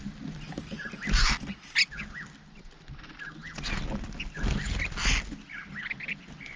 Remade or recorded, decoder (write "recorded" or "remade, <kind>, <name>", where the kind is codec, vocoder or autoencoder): recorded